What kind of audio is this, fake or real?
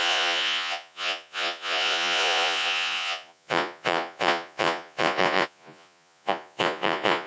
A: fake